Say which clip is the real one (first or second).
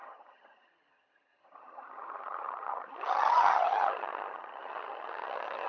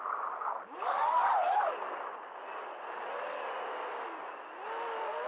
second